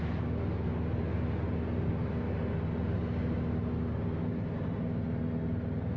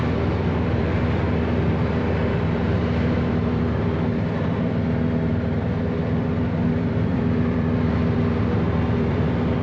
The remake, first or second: second